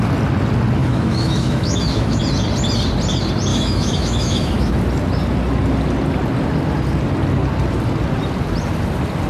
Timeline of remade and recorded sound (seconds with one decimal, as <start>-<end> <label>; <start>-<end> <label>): 0.0-0.8 recorded; 0.8-2.2 remade; 2.2-3.5 recorded; 3.5-4.7 remade; 4.7-9.3 recorded